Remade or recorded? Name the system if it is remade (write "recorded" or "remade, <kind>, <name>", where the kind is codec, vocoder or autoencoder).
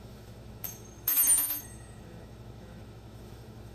remade, autoencoder, DAC-VAE